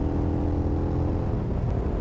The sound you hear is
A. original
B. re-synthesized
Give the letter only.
A